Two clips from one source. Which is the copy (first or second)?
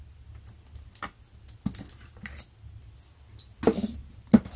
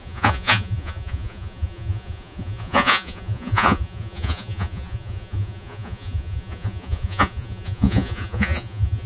second